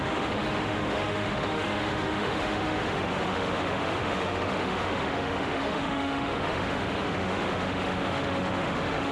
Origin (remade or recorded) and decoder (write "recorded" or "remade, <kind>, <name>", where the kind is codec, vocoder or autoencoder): remade, autoencoder, DAC-VAE